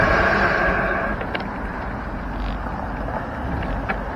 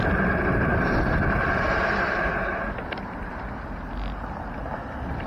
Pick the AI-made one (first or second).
second